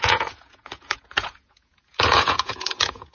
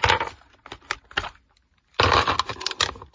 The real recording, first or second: second